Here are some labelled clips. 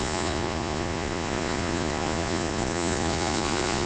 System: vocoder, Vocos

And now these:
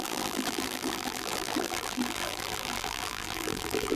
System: vocoder, BigVGAN v2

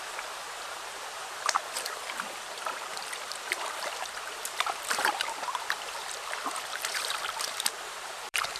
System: vocoder, BigVGAN v2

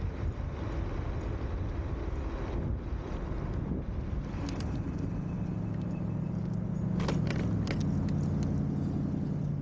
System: none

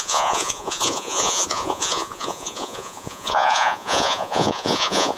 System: vocoder, Vocos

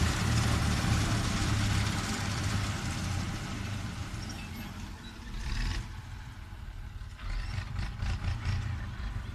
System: vocoder, BigVGAN v2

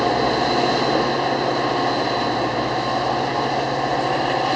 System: none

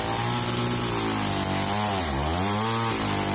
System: none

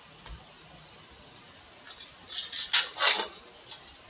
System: none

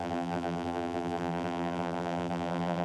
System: vocoder, BigVGAN v2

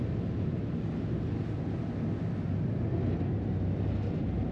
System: none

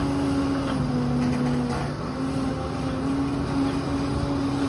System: none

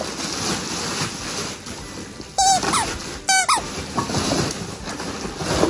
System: none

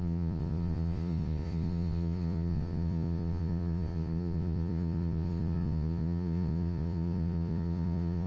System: vocoder, Vocos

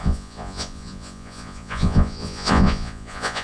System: vocoder, Vocos